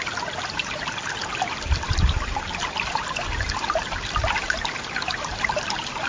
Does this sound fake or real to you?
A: real